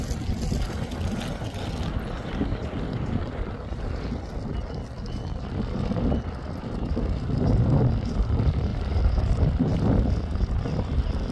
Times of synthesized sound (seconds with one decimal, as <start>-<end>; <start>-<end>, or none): none